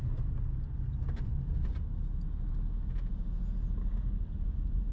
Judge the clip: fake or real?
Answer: real